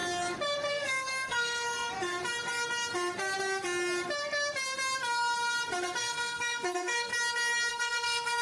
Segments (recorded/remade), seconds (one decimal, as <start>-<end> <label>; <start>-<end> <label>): 0.0-0.7 recorded; 0.7-1.9 remade; 1.9-6.0 recorded; 6.0-7.1 remade; 7.1-7.7 recorded; 7.7-8.4 remade